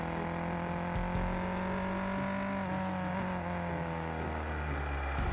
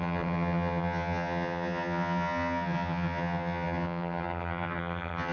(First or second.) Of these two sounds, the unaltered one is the first